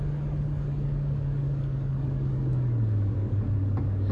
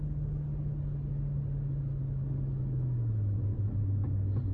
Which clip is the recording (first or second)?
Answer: second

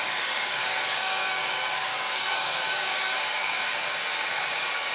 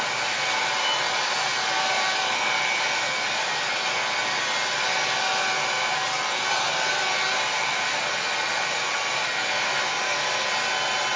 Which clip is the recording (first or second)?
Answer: second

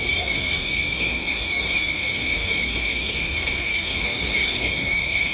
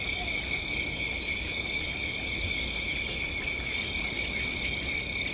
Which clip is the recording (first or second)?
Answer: second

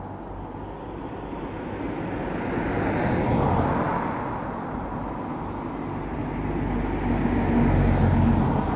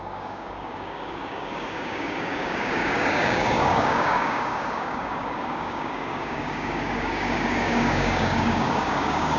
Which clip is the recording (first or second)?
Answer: first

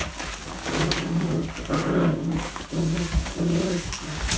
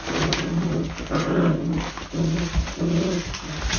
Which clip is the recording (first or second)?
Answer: second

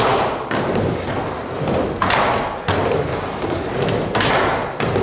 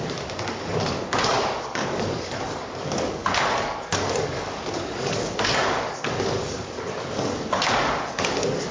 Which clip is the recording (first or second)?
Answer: first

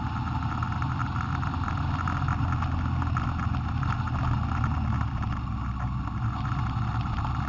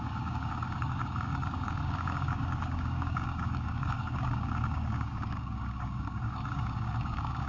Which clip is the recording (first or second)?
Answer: first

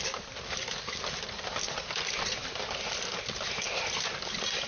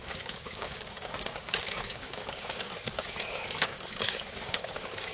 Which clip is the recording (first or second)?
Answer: first